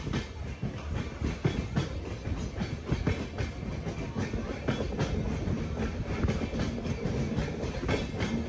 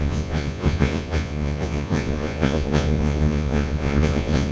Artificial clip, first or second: second